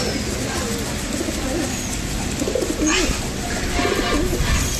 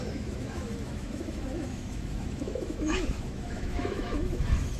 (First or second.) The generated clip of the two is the second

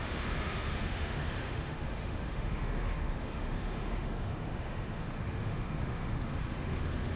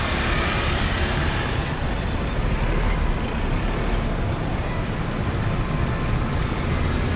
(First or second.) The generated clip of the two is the first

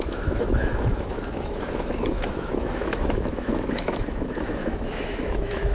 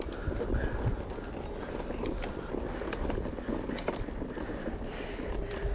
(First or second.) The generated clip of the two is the first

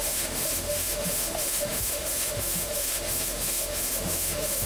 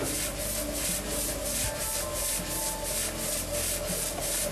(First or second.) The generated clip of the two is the first